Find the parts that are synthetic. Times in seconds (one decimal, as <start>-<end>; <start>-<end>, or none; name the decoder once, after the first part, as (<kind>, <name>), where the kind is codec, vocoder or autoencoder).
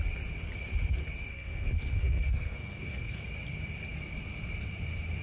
1.3-3.2 (codec, SNAC)